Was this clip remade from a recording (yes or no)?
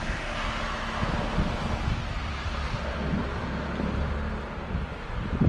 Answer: no